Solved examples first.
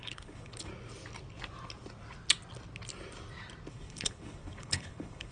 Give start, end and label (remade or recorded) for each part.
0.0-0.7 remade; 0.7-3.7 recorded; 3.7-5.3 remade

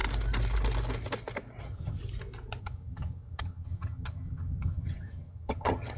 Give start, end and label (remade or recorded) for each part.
0.0-1.6 recorded; 1.6-2.0 remade; 2.0-2.6 recorded; 2.6-6.0 remade

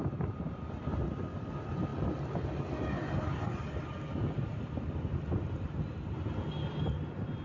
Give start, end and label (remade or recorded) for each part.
0.0-7.4 recorded

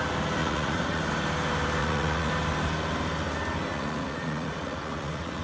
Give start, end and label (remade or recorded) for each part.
0.0-0.4 recorded; 0.4-1.0 remade; 1.0-1.8 recorded; 1.8-2.3 remade; 2.3-3.7 recorded; 3.7-5.4 remade

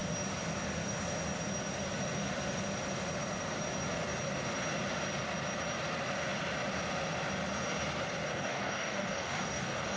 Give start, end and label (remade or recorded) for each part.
0.0-8.3 recorded; 8.3-10.0 remade